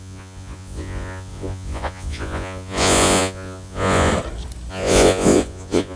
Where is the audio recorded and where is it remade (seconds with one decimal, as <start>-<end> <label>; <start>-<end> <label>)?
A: 0.0-4.1 remade; 4.1-4.7 recorded; 4.7-6.0 remade